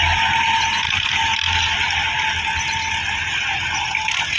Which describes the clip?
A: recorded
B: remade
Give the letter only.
A